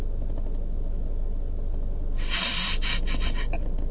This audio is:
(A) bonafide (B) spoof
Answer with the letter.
A